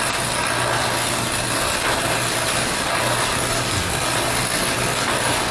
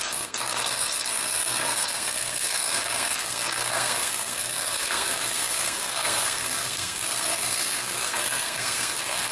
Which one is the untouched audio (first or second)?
first